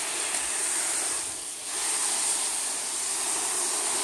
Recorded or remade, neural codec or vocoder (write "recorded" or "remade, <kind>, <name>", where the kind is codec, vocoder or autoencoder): recorded